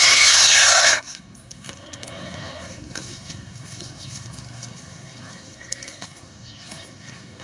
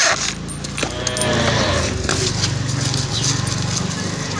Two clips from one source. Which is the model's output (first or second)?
first